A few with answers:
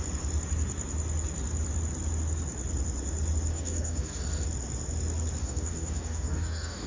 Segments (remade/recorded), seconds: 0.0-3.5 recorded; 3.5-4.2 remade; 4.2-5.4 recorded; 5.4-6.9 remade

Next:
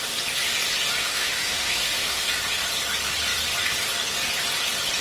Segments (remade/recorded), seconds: 0.0-1.0 recorded; 1.0-2.3 remade; 2.3-5.0 recorded

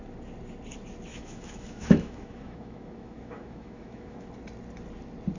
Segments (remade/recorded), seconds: 0.0-1.1 recorded; 1.1-4.3 remade; 4.3-5.4 recorded

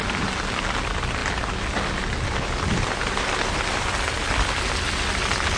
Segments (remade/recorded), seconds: 0.0-1.2 recorded; 1.2-4.6 remade; 4.6-5.6 recorded

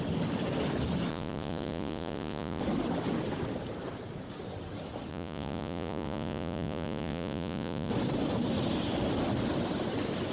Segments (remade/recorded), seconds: 0.0-1.1 recorded; 1.1-2.6 remade; 2.6-5.1 recorded; 5.1-7.9 remade; 7.9-10.3 recorded

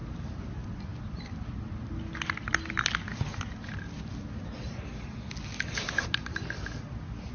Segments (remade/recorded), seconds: 0.0-7.3 recorded

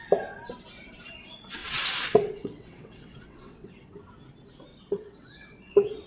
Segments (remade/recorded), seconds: 0.0-1.6 recorded; 1.6-3.7 remade; 3.7-4.7 recorded; 4.7-6.1 remade